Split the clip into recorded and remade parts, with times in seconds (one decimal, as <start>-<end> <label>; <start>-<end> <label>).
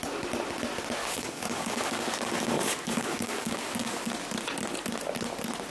0.0-1.0 recorded; 1.0-4.1 remade; 4.1-5.7 recorded